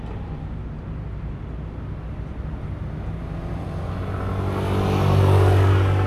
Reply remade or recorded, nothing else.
recorded